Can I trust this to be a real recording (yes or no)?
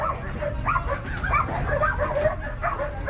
yes